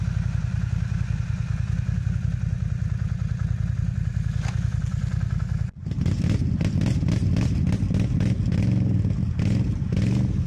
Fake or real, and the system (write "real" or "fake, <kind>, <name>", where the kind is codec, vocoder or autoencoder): real